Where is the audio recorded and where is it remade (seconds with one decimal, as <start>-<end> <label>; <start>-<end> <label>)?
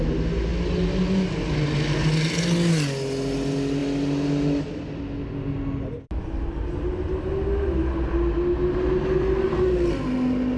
0.0-10.6 recorded